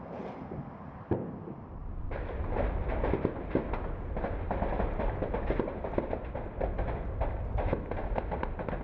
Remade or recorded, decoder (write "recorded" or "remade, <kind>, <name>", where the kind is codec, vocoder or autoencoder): recorded